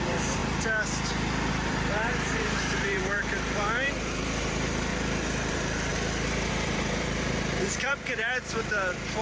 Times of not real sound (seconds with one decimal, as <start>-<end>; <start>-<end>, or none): 0.0-0.4; 1.5-4.9; 5.5-5.9; 6.5-9.2